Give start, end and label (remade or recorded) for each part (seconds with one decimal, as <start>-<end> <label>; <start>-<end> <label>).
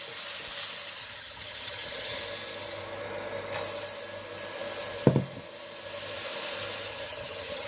0.0-1.0 recorded; 1.0-2.2 remade; 2.2-6.9 recorded; 6.9-7.7 remade